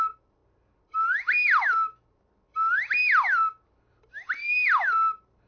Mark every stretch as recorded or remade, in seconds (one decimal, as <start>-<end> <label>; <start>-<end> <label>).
0.0-5.5 recorded